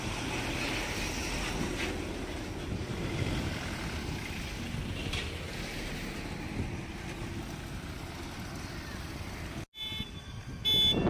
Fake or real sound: real